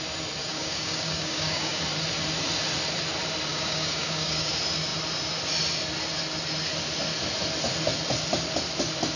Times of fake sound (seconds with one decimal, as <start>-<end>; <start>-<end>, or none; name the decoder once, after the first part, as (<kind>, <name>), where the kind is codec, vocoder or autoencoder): 0.4-1.8 (codec, DAC); 3.5-4.5